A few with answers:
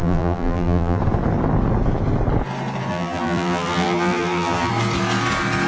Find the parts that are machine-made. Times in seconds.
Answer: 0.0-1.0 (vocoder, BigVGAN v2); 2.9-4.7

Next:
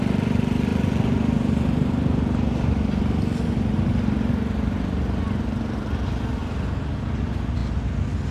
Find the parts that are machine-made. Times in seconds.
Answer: 6.4-7.1 (vocoder, BigVGAN v2)

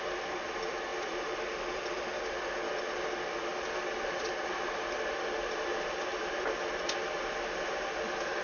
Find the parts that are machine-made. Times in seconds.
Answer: 0.9-2.2 (vocoder, BigVGAN v2); 6.1-6.8